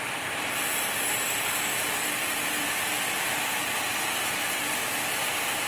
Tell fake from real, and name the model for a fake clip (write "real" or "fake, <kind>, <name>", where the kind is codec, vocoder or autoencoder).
fake, vocoder, BigVGAN v2